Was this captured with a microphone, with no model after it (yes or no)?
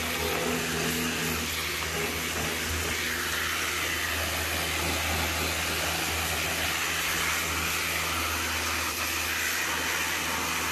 yes